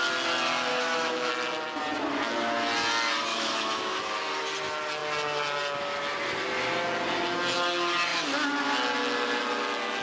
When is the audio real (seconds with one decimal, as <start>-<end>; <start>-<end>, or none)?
0.0-0.7; 1.3-3.3; 4.0-10.0